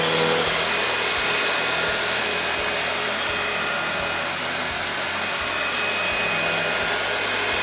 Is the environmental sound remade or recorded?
recorded